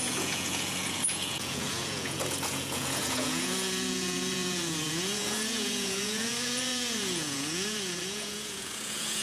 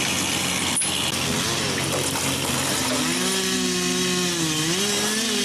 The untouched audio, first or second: second